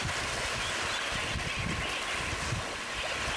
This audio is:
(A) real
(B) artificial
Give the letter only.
A